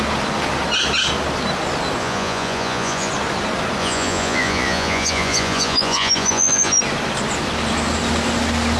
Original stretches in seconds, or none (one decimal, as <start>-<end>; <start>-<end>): 0.0-2.0; 3.1-3.8; 6.8-8.8